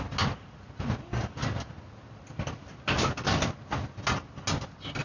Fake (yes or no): no